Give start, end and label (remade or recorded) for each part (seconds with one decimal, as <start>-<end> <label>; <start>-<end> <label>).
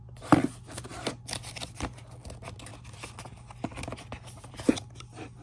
0.0-5.4 recorded